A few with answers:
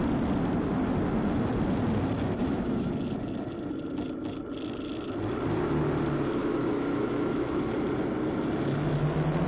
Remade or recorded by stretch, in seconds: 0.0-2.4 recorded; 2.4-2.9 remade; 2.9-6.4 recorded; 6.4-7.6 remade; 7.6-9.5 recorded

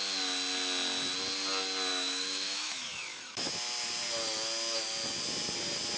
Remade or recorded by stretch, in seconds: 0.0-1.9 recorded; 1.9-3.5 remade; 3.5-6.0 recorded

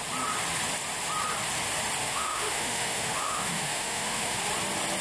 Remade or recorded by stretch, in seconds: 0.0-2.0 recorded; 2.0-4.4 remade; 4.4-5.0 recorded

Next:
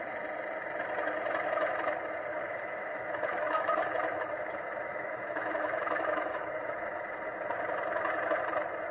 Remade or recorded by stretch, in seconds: 0.0-2.3 recorded; 2.3-4.3 remade; 4.3-4.9 recorded; 4.9-7.0 remade; 7.0-8.9 recorded

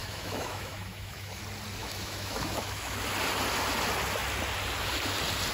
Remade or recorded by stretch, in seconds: 0.0-1.4 remade; 1.4-1.8 recorded; 1.8-3.0 remade; 3.0-5.5 recorded

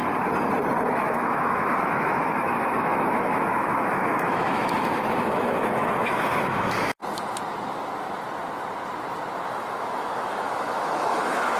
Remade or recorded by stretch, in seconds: 0.0-0.9 recorded; 0.9-7.0 remade; 7.0-9.5 recorded; 9.5-11.6 remade